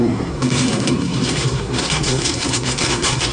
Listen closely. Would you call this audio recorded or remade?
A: remade